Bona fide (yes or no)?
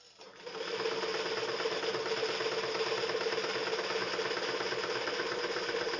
yes